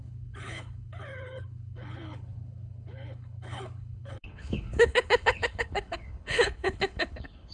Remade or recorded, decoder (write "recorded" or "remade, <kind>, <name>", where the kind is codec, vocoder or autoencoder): remade, codec, HILCodec